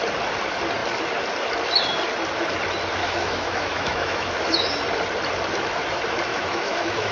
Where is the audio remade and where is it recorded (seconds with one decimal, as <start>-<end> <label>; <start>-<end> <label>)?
0.0-3.0 recorded; 3.0-4.7 remade; 4.7-6.3 recorded; 6.3-7.1 remade